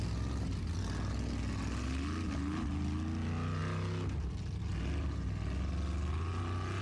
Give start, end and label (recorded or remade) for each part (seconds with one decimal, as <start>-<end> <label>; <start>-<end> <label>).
0.0-6.8 recorded